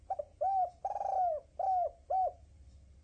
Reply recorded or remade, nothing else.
recorded